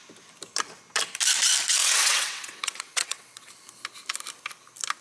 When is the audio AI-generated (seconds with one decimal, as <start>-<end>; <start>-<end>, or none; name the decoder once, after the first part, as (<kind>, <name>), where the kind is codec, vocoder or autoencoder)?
1.8-3.5 (vocoder, WaveNeXt)